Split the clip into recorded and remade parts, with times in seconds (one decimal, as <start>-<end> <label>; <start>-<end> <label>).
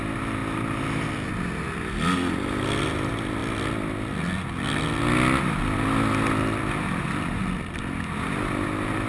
0.0-9.1 recorded